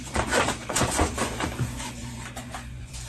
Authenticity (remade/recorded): remade